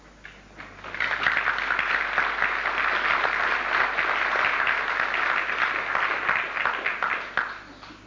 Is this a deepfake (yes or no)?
no